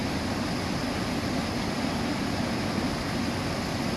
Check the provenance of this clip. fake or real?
real